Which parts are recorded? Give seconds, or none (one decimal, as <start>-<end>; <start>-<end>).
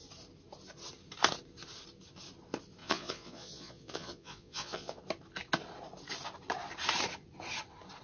0.0-2.8; 5.0-8.0